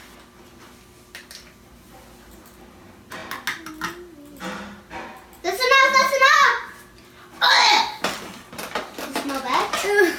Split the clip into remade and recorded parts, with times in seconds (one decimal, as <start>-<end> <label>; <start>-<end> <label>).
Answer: 0.0-10.2 recorded